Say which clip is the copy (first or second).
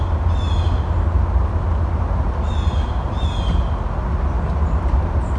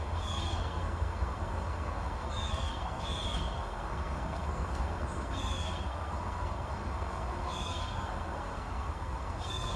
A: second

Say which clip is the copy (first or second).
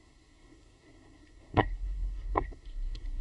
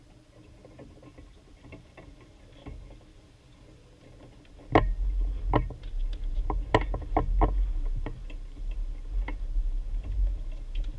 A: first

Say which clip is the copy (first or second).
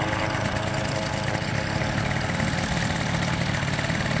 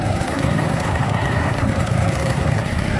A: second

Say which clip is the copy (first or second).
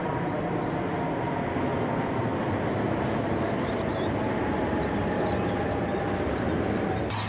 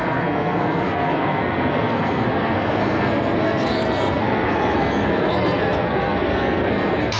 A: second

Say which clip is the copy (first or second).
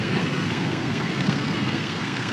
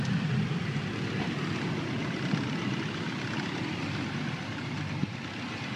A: first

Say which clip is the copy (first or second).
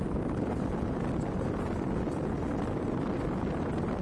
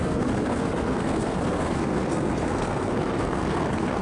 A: second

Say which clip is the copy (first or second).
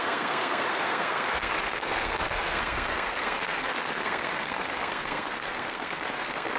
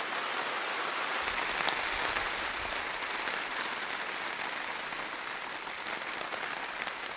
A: first